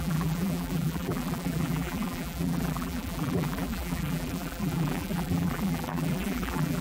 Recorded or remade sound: remade